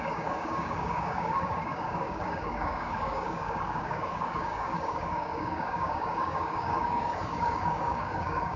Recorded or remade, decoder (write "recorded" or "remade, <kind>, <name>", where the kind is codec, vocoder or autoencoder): remade, codec, DAC